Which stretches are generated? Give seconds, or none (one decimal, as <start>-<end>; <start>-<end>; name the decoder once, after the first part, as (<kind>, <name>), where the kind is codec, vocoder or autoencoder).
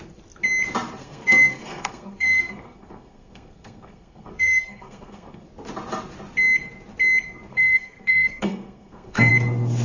1.0-5.5 (codec, SNAC); 7.5-9.3